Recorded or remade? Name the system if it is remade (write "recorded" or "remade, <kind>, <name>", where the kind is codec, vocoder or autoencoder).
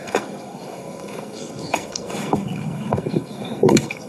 remade, codec, SNAC